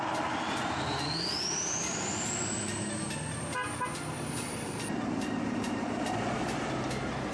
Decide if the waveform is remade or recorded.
recorded